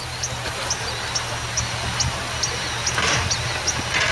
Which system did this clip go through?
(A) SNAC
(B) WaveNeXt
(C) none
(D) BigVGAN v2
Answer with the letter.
C